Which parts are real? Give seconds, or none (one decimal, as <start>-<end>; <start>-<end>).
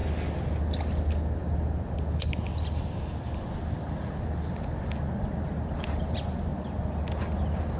0.0-7.8